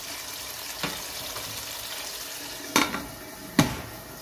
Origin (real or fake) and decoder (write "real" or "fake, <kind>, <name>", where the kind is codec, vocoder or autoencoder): real